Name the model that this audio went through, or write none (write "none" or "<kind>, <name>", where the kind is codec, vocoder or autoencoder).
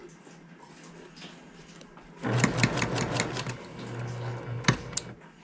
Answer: none